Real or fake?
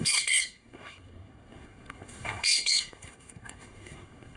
fake